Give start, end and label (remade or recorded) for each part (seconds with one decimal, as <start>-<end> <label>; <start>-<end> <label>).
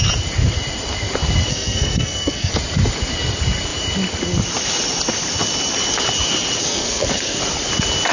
0.0-1.5 recorded; 1.5-2.5 remade; 2.5-6.6 recorded; 6.6-7.4 remade; 7.4-8.1 recorded